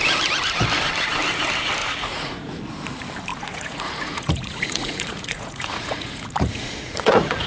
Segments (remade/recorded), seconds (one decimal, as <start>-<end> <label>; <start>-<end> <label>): 0.0-1.8 recorded; 1.8-2.6 remade; 2.6-3.3 recorded; 3.3-7.5 remade